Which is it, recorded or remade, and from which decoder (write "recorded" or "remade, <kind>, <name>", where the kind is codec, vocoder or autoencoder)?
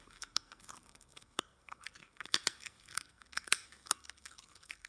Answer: remade, codec, SNAC